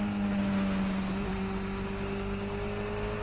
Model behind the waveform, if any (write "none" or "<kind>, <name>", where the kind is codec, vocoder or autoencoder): none